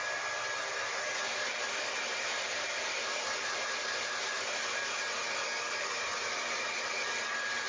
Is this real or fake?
real